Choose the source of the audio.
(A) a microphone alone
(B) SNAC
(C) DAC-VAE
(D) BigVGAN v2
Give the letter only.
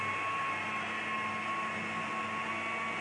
A